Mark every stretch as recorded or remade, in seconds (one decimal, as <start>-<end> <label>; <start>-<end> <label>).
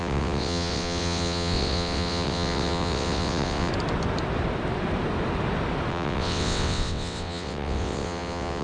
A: 0.0-3.7 remade; 3.7-5.9 recorded; 5.9-8.6 remade